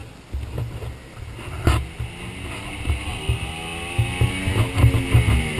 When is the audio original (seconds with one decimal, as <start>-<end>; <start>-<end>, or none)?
0.0-5.6